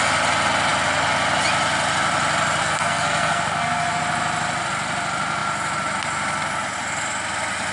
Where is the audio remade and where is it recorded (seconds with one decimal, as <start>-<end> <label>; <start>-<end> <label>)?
0.0-2.6 recorded; 2.6-4.0 remade; 4.0-7.7 recorded